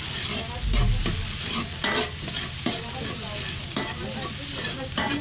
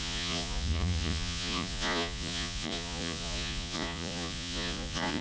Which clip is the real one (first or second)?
first